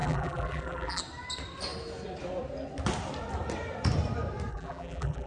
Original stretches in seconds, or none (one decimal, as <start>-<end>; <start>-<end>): 1.0-4.5